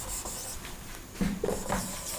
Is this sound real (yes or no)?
no